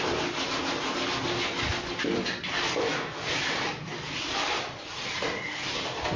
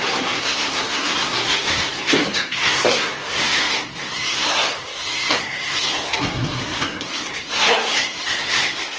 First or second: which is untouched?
first